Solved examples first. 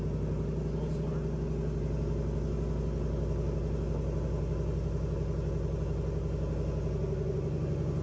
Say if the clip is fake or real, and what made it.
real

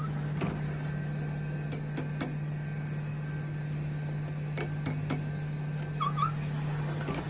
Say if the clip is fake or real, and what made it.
real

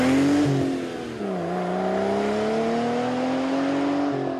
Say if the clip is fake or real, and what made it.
real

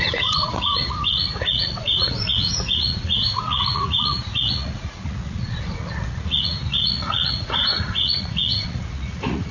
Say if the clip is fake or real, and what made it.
fake, vocoder, Vocos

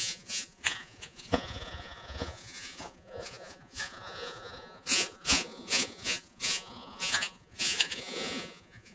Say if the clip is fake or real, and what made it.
fake, vocoder, Vocos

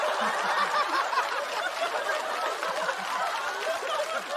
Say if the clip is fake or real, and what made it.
real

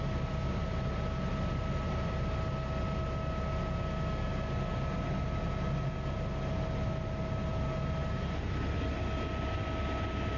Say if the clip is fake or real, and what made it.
real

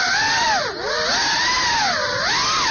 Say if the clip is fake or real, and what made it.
real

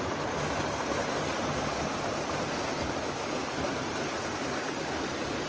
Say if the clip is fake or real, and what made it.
real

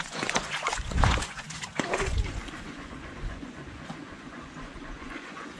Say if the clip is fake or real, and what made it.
fake, vocoder, Vocos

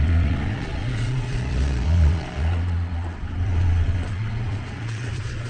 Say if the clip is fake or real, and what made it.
fake, vocoder, Vocos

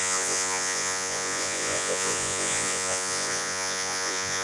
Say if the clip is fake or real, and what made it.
fake, vocoder, Vocos